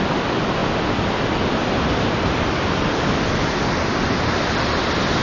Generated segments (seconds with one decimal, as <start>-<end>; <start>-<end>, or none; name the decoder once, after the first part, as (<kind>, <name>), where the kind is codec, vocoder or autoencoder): none

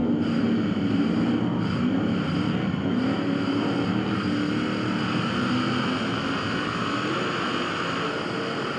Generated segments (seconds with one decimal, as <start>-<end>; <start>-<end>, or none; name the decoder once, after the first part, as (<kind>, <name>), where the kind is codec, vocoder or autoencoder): none